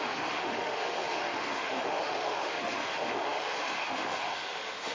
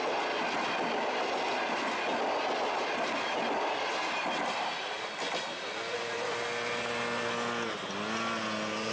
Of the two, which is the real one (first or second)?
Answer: second